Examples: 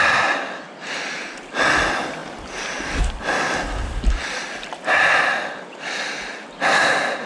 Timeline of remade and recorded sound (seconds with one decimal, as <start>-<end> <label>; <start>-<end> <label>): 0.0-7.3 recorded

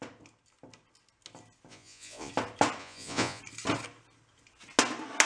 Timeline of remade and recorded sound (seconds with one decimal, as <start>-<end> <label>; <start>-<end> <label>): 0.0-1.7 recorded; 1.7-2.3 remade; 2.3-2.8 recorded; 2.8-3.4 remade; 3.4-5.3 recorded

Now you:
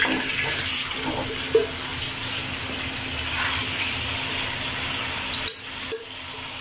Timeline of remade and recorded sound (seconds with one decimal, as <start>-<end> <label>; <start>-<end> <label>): 0.0-6.6 recorded

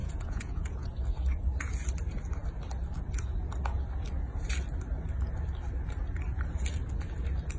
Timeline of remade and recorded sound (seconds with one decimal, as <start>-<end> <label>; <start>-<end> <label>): 0.0-0.9 remade; 0.9-7.6 recorded